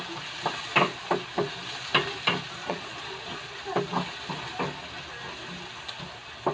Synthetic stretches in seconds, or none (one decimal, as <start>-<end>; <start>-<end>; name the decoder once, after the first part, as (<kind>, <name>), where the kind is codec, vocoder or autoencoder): 2.6-3.6 (vocoder, Vocos)